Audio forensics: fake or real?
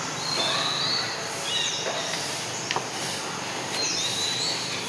real